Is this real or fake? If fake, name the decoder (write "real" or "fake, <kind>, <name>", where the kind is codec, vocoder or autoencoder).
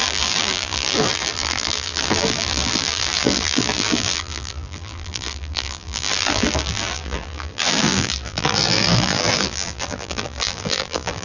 fake, vocoder, BigVGAN v2